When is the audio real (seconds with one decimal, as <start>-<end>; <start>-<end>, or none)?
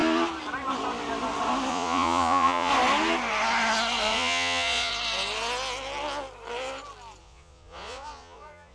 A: 0.0-1.7; 2.7-4.0; 4.9-7.2